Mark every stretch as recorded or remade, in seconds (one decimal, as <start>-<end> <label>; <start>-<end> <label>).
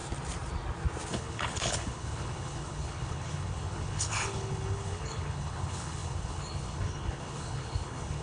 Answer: 0.0-1.1 recorded; 1.1-8.2 remade